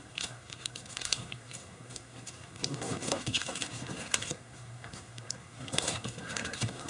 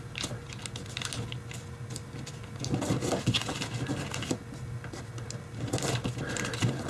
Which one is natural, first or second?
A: second